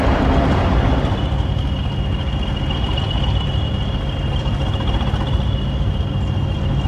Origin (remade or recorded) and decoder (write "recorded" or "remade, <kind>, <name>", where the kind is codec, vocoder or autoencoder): recorded